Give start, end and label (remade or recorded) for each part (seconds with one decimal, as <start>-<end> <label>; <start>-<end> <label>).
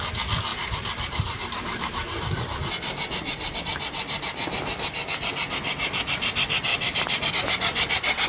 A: 0.0-0.5 recorded; 0.5-3.6 remade; 3.6-6.7 recorded; 6.7-7.3 remade; 7.3-8.3 recorded